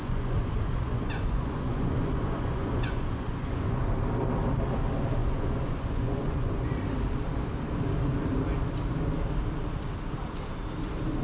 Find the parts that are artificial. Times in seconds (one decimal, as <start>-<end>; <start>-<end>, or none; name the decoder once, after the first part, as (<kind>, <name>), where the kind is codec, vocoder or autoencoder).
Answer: 0.0-3.8 (vocoder, Vocos); 5.2-6.7